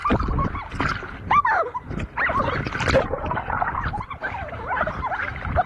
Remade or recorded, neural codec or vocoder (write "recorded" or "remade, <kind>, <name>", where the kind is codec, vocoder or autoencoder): recorded